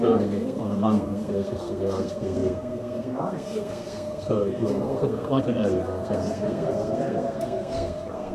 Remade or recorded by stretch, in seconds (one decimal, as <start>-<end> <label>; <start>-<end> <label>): 0.0-8.3 remade